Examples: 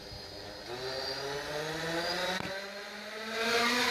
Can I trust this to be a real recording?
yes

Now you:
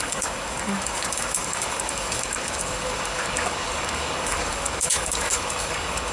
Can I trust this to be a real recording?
no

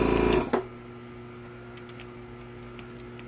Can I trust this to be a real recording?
yes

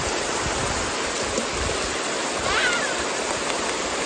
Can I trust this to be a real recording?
yes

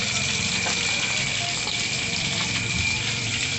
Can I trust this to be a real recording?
no